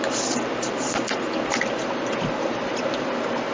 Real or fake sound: real